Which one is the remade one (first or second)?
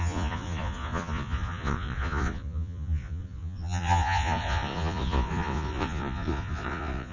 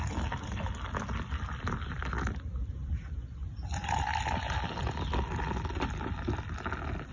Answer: first